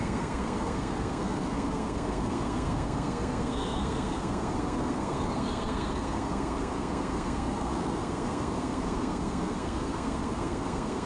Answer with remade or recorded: remade